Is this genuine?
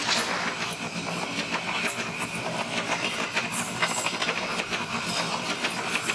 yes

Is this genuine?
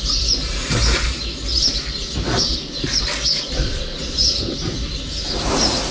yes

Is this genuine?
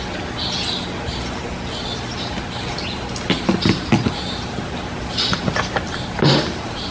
yes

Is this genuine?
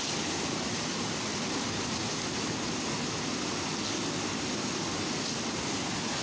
yes